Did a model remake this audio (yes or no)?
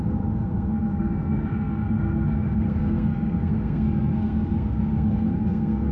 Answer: yes